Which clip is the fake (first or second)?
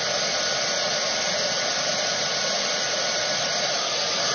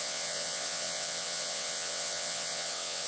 second